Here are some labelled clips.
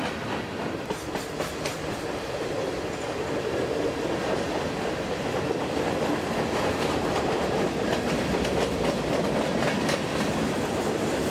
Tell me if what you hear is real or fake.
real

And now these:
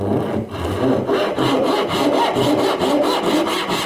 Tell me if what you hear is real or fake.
real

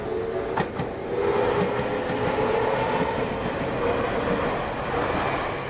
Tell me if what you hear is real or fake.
real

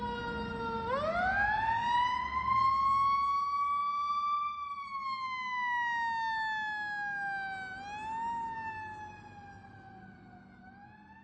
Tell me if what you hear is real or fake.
real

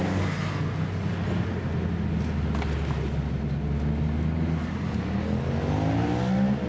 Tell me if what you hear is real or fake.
real